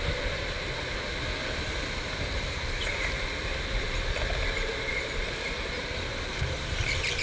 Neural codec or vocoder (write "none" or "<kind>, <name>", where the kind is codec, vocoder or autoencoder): none